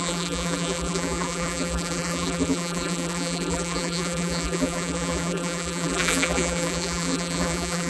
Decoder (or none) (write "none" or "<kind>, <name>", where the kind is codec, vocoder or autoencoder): vocoder, BigVGAN v2